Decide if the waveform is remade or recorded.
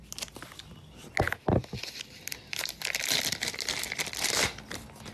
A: recorded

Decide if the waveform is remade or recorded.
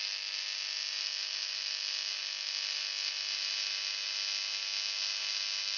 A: recorded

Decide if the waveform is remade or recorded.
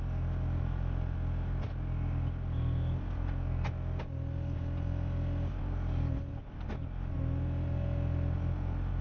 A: recorded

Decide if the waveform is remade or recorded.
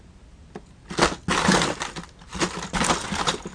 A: recorded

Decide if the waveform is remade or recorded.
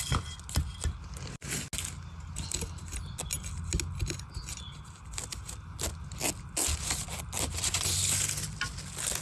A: recorded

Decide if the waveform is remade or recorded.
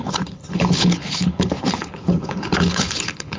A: remade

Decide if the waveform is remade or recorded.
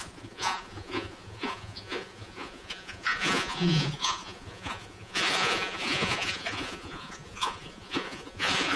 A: remade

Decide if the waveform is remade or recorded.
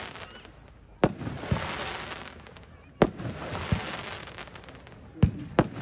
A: recorded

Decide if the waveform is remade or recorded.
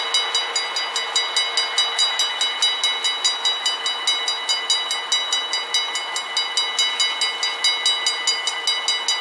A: recorded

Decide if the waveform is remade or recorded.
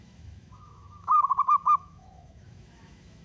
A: remade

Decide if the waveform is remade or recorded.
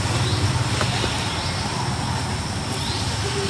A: recorded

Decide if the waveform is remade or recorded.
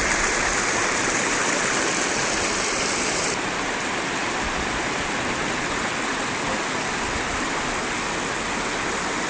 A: recorded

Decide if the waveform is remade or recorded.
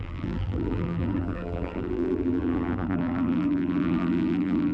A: remade